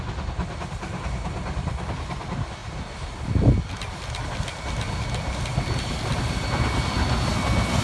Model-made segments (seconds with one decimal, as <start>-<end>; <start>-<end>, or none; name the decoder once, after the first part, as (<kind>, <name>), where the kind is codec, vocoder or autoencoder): none